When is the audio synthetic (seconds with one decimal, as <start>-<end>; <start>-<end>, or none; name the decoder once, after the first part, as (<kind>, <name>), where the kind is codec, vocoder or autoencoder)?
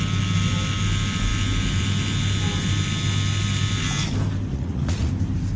4.5-5.1 (vocoder, Vocos)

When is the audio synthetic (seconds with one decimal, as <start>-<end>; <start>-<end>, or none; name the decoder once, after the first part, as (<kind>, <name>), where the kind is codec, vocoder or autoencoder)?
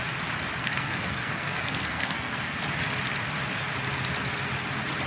0.6-2.6 (codec, SNAC)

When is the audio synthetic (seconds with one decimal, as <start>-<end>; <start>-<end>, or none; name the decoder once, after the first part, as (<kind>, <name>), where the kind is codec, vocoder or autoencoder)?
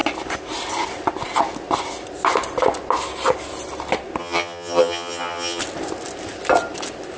4.2-5.6 (vocoder, HiFi-GAN)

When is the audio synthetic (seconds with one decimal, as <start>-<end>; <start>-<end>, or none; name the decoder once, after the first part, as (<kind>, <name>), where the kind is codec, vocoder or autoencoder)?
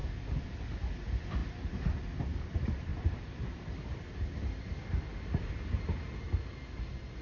0.0-0.6 (vocoder, BigVGAN v2); 2.9-5.5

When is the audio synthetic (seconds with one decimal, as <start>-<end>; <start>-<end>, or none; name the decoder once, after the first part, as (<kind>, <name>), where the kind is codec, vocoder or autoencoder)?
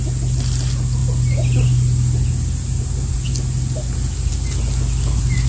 none